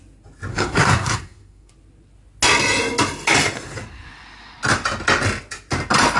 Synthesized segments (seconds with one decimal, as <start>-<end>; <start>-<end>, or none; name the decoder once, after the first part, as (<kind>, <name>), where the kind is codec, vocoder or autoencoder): 0.5-1.7 (codec, SNAC)